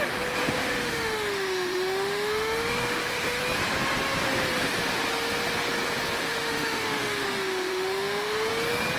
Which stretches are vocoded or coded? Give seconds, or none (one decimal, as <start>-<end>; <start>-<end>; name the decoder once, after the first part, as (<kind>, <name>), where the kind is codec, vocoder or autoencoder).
0.4-3.4 (autoencoder, DAC-VAE); 6.2-8.5